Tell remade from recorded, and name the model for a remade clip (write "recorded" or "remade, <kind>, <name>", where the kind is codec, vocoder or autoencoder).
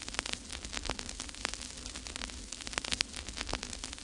recorded